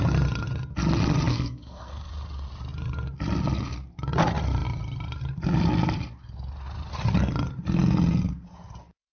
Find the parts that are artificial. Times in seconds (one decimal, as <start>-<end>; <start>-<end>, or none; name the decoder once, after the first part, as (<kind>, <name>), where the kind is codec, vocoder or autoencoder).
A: 1.3-2.1 (codec, SNAC)